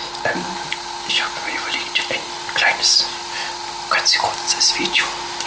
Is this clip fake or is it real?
real